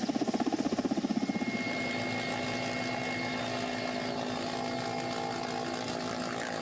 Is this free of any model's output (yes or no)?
yes